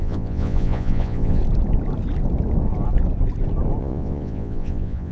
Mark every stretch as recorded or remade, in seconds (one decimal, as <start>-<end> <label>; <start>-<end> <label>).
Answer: 0.0-1.4 remade; 1.4-3.8 recorded; 3.8-5.1 remade